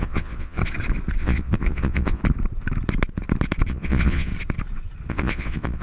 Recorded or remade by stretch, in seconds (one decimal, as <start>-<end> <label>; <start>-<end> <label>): 0.0-0.6 remade; 0.6-1.2 recorded; 1.2-2.2 remade; 2.2-3.7 recorded; 3.7-4.3 remade; 4.3-5.1 recorded; 5.1-5.8 remade